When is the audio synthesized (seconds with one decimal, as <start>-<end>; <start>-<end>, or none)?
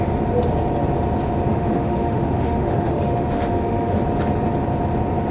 1.5-4.0